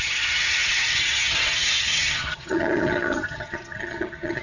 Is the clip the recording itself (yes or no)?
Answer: no